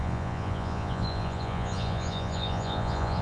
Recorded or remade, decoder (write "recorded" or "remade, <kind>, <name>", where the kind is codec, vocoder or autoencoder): remade, vocoder, Vocos